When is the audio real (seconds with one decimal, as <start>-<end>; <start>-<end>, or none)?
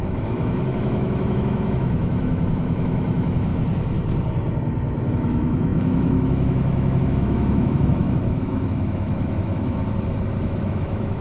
3.5-5.1; 9.8-10.4